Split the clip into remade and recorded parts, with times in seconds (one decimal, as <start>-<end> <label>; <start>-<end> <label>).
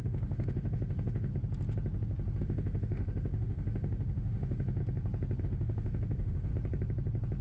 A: 0.0-1.3 remade; 1.3-2.4 recorded; 2.4-4.8 remade; 4.8-5.4 recorded; 5.4-6.5 remade; 6.5-7.4 recorded